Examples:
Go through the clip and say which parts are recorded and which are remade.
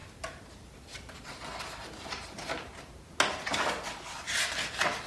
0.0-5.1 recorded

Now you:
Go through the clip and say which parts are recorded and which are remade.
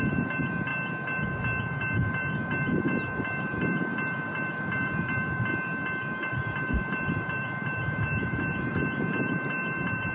0.0-0.7 remade; 0.7-2.1 recorded; 2.1-5.5 remade; 5.5-6.3 recorded; 6.3-10.1 remade